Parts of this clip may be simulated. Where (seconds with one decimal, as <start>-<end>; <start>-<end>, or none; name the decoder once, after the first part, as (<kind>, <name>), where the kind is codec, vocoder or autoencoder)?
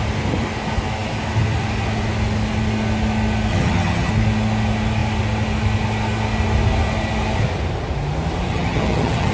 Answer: 3.5-4.1 (vocoder, HiFi-GAN); 8.5-9.3